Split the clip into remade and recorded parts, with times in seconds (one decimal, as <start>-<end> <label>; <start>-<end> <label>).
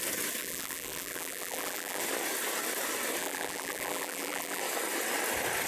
0.0-0.4 recorded; 0.4-2.0 remade; 2.0-3.2 recorded; 3.2-4.6 remade; 4.6-5.7 recorded